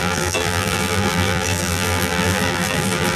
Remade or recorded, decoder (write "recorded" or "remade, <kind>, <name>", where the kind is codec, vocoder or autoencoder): remade, vocoder, BigVGAN v2